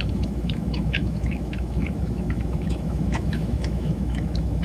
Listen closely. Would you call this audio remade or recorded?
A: remade